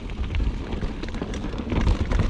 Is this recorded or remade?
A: recorded